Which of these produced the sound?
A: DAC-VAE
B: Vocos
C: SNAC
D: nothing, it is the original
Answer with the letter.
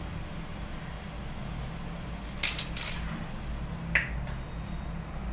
D